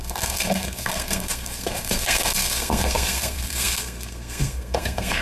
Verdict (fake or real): fake